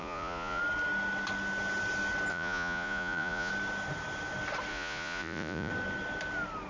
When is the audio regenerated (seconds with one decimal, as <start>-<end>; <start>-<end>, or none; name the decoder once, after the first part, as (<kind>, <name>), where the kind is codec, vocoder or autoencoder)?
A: 0.0-0.6 (vocoder, Vocos); 2.3-3.5; 4.7-5.7